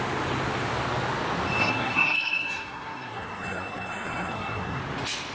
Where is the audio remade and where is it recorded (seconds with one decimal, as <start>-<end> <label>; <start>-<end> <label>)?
0.0-1.6 recorded; 1.6-4.8 remade; 4.8-5.3 recorded

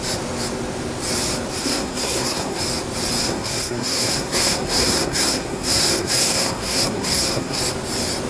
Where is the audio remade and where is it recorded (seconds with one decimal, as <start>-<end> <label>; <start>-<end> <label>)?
0.0-1.6 recorded; 1.6-2.6 remade; 2.6-3.2 recorded; 3.2-7.6 remade; 7.6-8.3 recorded

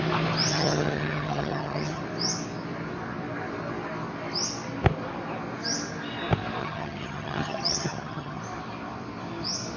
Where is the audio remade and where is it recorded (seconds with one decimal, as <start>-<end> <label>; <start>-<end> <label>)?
0.0-0.5 recorded; 0.5-2.0 remade; 2.0-6.6 recorded; 6.6-8.4 remade; 8.4-9.8 recorded

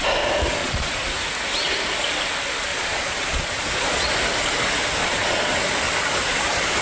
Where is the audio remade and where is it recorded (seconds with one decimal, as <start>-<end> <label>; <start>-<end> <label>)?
0.0-0.6 recorded; 0.6-1.1 remade; 1.1-2.7 recorded; 2.7-4.1 remade; 4.1-5.0 recorded; 5.0-5.6 remade; 5.6-6.8 recorded

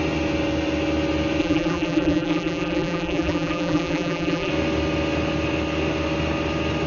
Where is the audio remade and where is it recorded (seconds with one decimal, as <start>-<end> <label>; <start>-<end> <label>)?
0.0-1.4 recorded; 1.4-4.5 remade; 4.5-6.9 recorded